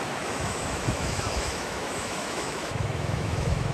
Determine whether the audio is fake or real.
fake